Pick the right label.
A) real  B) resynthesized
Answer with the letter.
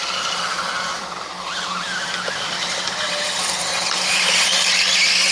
A